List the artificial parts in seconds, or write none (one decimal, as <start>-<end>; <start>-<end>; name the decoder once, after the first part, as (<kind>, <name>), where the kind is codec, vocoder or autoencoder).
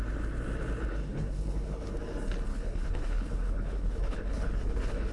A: 0.9-1.9 (codec, HILCodec); 2.5-5.1